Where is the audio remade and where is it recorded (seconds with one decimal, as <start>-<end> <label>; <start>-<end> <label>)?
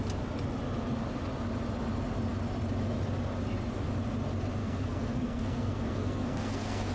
0.0-4.6 recorded; 4.6-6.9 remade